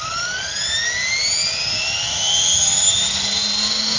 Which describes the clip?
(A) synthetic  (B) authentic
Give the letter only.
B